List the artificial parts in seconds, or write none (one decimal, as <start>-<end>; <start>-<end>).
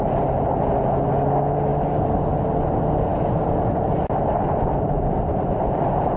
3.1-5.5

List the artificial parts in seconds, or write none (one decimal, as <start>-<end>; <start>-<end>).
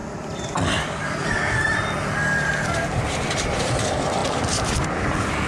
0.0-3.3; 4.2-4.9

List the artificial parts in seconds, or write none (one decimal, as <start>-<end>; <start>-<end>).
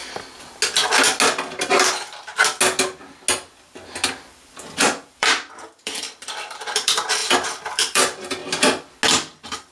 1.7-2.3; 4.1-8.4